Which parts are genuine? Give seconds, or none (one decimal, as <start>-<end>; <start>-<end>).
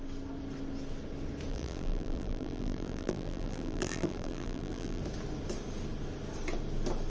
0.0-1.5; 5.0-7.1